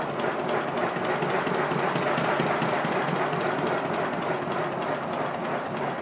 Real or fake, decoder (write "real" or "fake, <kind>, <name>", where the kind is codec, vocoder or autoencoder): real